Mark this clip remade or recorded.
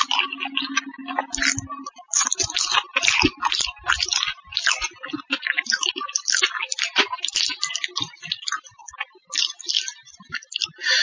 recorded